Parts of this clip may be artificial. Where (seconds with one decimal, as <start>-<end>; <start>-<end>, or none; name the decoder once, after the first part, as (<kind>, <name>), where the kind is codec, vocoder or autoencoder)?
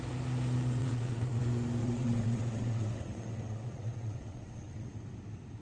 0.8-1.4 (vocoder, WaveNeXt); 1.8-4.9